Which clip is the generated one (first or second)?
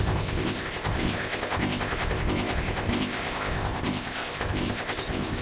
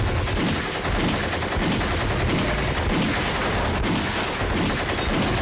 first